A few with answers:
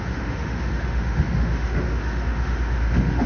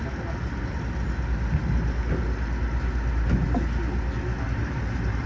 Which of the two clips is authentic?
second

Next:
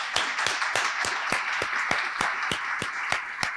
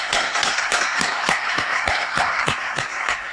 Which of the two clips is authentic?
first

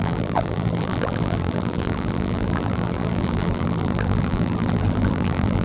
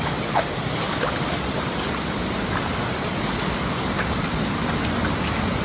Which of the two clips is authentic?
second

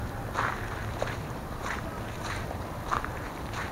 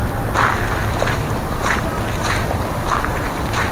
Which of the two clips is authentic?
second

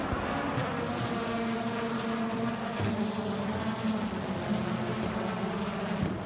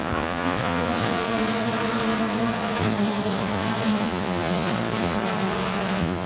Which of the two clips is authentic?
first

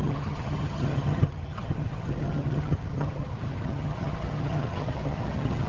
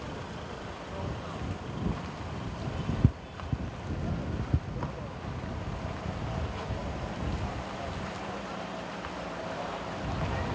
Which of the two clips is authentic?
second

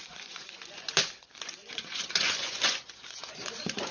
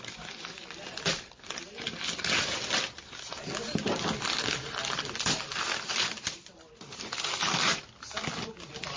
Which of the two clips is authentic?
second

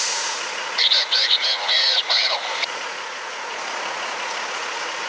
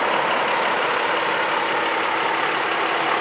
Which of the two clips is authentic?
second